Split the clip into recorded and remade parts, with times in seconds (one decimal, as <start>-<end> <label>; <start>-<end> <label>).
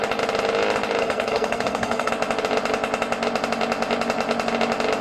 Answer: 0.0-1.0 recorded; 1.0-2.1 remade; 2.1-5.0 recorded